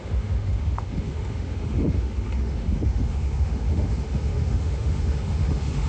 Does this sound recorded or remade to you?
remade